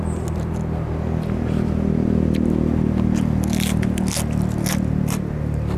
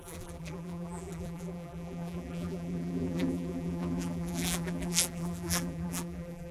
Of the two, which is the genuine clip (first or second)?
first